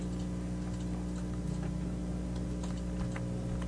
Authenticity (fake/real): real